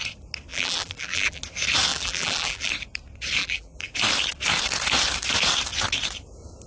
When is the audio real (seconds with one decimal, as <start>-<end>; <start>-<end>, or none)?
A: 0.0-0.5; 1.4-1.9; 2.7-3.4; 3.9-6.7